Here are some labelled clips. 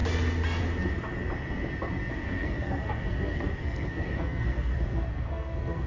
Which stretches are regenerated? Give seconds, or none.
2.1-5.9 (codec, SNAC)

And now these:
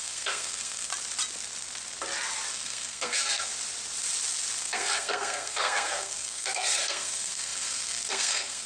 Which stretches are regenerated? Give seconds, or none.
0.0-0.9 (codec, SNAC); 2.5-3.5; 4.6-8.7

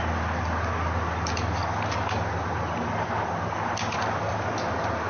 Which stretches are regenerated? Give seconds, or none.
none

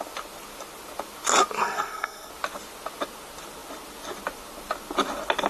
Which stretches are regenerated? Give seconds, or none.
1.6-2.3 (codec, SNAC)

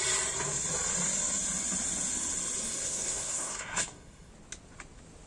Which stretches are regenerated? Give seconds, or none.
2.6-4.3 (codec, SNAC)

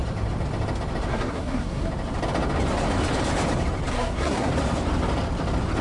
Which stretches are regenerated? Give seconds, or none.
1.1-1.9 (codec, SNAC); 3.9-4.5

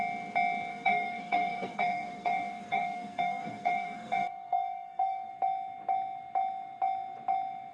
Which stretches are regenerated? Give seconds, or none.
0.7-5.3 (codec, SNAC)